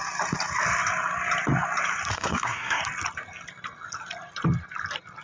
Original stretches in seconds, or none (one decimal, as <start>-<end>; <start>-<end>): 0.0-2.1; 2.8-5.2